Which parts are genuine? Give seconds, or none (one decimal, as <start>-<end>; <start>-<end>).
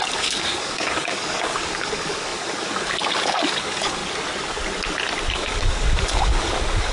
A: 4.0-5.3